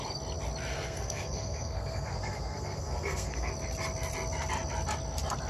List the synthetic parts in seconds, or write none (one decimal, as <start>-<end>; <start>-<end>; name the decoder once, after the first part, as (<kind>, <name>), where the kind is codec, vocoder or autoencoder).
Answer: 0.7-3.5 (codec, SNAC)